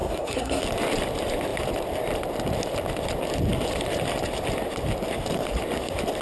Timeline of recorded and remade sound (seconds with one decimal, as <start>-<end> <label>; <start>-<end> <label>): 0.0-0.6 remade; 0.6-6.2 recorded